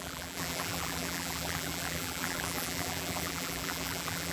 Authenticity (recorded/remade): remade